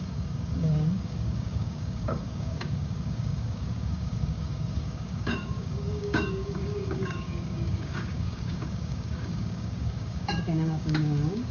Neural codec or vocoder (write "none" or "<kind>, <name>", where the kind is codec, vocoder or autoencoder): codec, DAC